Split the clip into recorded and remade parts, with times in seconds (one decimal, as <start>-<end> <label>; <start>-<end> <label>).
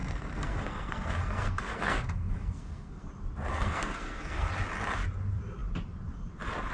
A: 0.0-3.1 remade; 3.1-3.5 recorded; 3.5-4.5 remade; 4.5-6.7 recorded